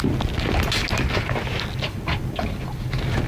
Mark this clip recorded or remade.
recorded